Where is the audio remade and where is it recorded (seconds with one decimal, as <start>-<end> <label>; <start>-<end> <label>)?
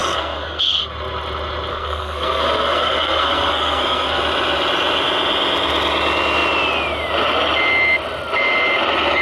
0.0-0.8 remade; 0.8-1.7 recorded; 1.7-4.2 remade; 4.2-9.2 recorded